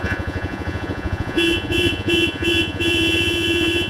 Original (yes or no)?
no